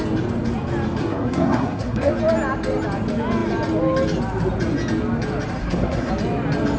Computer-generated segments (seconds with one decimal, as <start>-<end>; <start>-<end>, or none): 1.0-2.1; 5.6-6.1